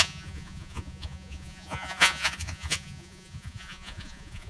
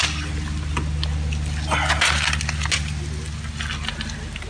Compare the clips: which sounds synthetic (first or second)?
first